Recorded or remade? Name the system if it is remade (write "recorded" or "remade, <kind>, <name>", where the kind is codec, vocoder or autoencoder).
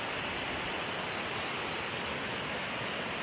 recorded